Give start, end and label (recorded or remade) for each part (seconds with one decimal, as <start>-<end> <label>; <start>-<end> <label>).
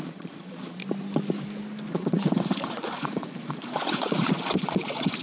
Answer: 0.0-0.8 remade; 0.8-1.9 recorded; 1.9-5.2 remade